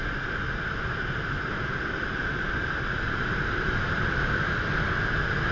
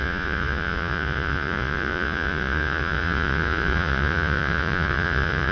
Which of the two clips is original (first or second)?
first